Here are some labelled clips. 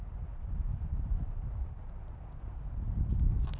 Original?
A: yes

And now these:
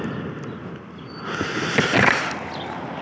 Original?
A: yes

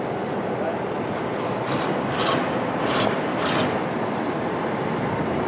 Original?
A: yes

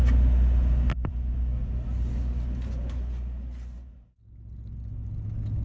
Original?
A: yes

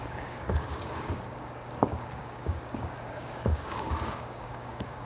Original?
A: no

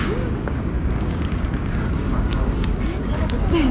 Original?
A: no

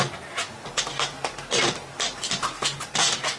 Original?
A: yes